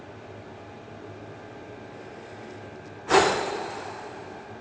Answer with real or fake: real